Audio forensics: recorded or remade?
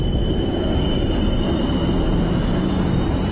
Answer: remade